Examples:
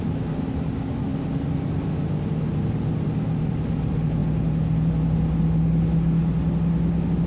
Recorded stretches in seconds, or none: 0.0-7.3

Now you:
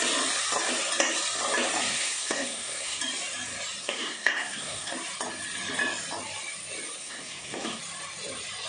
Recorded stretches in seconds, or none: 0.0-1.9; 3.0-3.8; 4.9-7.0; 7.8-8.7

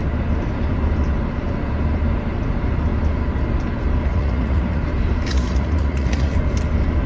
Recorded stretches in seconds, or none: 0.0-4.1; 4.8-5.3; 6.3-7.1

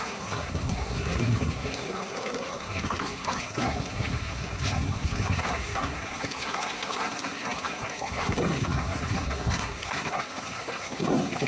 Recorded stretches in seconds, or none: none

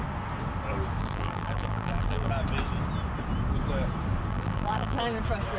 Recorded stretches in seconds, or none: 0.0-1.0; 2.3-4.3; 5.0-5.6

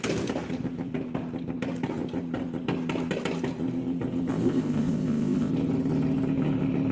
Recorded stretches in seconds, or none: 0.0-4.3; 5.5-6.9

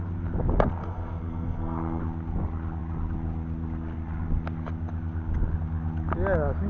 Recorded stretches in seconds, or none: 0.0-0.8; 2.0-6.7